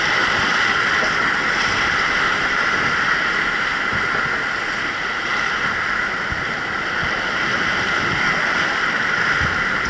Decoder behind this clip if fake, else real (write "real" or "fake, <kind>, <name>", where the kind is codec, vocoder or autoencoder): real